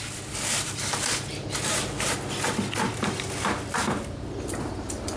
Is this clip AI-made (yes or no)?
no